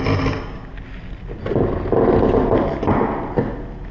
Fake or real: real